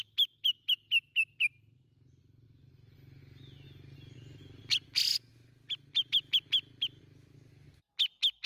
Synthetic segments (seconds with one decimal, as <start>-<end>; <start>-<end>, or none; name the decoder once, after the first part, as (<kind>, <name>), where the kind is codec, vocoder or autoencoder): none